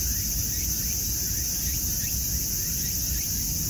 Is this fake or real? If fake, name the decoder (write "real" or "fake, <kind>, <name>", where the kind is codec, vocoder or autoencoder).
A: real